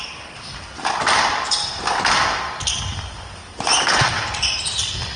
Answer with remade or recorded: recorded